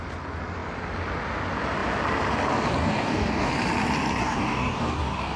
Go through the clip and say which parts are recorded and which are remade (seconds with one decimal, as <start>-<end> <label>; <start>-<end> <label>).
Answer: 0.0-2.8 recorded; 2.8-3.5 remade; 3.5-4.2 recorded; 4.2-5.4 remade